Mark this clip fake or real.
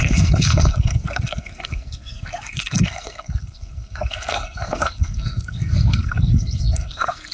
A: fake